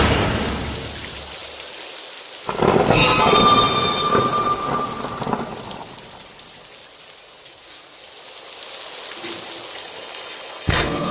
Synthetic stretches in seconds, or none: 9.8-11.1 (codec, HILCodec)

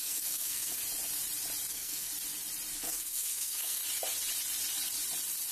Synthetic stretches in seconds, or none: 0.0-0.8 (codec, SNAC); 1.7-2.1; 2.8-3.8